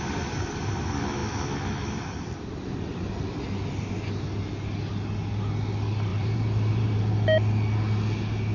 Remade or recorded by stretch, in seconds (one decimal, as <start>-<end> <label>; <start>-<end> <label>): 0.0-6.1 recorded; 6.1-7.1 remade; 7.1-8.5 recorded